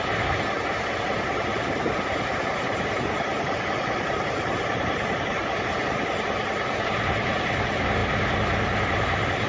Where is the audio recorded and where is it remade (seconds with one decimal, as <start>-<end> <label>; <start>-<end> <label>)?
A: 0.0-9.5 recorded